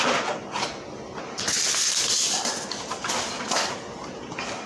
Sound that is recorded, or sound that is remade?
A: recorded